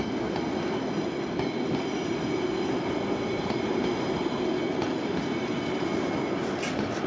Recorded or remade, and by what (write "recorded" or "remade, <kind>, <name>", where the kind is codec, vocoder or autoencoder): recorded